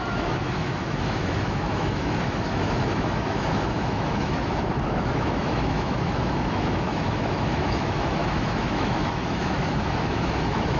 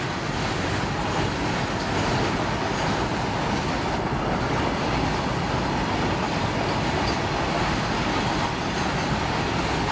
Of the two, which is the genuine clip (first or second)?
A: second